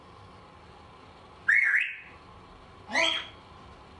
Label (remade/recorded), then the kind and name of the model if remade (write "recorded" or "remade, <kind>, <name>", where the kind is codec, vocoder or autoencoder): recorded